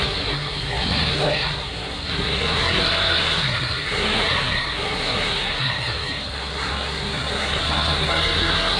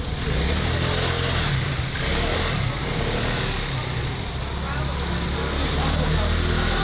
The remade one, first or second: first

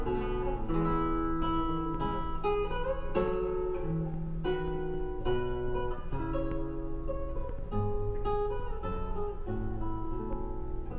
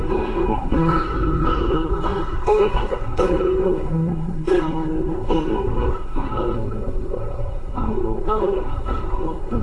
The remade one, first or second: second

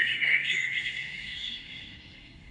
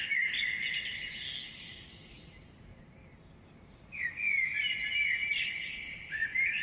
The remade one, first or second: first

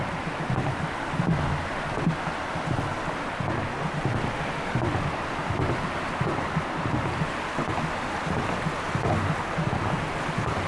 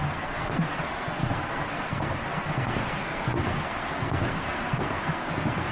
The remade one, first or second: second